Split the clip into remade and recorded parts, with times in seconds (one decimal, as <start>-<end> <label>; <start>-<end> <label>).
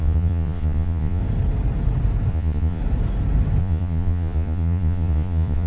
0.0-1.2 remade; 1.2-2.3 recorded; 2.3-2.8 remade; 2.8-3.6 recorded; 3.6-5.7 remade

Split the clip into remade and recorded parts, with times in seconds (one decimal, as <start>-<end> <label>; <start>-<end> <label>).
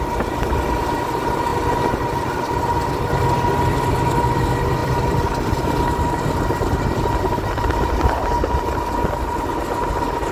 0.0-10.3 recorded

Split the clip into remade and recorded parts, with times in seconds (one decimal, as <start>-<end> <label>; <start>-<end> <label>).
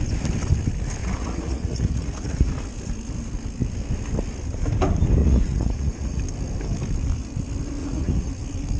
0.0-1.0 recorded; 1.0-2.5 remade; 2.5-5.2 recorded; 5.2-6.2 remade; 6.2-7.8 recorded; 7.8-8.3 remade; 8.3-8.8 recorded